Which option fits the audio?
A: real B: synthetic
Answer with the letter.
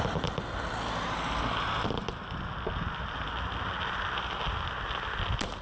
A